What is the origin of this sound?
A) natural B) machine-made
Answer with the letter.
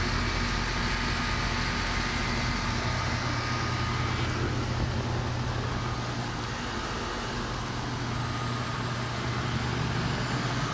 A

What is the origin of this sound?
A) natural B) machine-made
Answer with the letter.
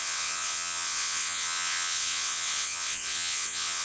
B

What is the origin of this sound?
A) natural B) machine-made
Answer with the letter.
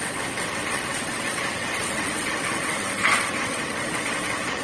B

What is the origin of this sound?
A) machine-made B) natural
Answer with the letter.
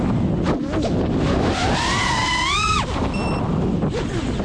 B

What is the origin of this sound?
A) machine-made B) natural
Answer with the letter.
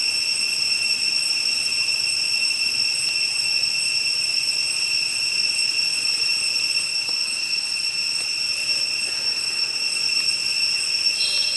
B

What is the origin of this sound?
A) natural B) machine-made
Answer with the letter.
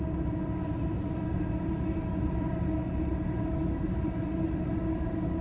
A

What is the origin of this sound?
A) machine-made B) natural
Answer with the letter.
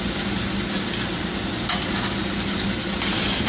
B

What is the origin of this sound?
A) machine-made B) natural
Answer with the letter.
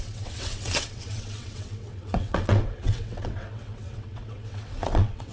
A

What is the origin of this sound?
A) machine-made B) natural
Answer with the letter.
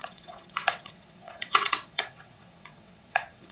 A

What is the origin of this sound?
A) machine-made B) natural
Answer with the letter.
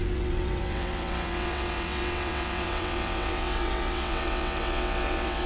A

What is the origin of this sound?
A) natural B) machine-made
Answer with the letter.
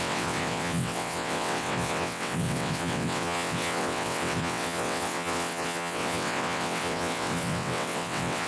B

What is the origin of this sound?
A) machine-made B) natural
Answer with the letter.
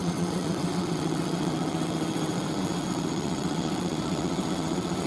A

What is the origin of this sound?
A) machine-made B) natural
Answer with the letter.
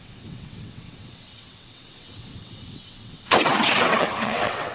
A